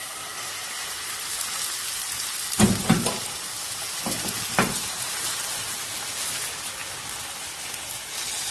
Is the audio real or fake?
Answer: real